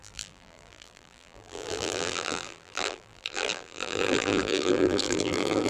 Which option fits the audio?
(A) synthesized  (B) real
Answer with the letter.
A